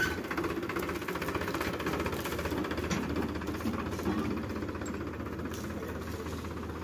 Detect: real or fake real